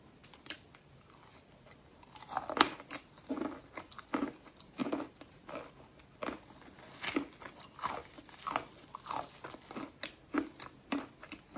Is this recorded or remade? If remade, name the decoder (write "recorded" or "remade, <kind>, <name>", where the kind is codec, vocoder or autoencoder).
recorded